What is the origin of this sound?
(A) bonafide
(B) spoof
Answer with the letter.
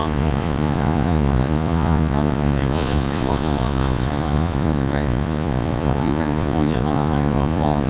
B